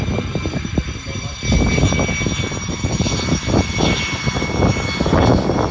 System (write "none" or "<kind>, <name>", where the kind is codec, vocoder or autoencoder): none